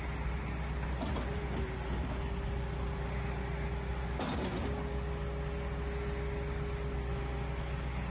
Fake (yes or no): no